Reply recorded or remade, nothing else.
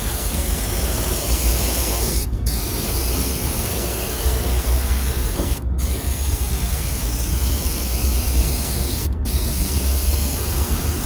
remade